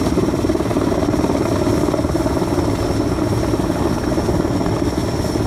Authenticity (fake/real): real